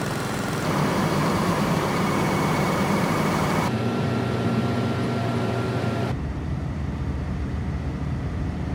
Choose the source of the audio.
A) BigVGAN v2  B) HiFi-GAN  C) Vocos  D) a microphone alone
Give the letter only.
A